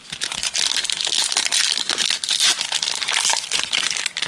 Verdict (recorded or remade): recorded